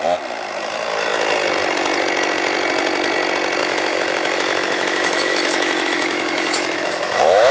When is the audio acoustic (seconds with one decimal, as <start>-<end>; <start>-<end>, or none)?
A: 0.0-3.6